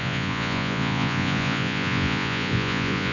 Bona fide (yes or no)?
no